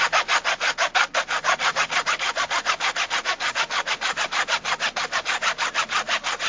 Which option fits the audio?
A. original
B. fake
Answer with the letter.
A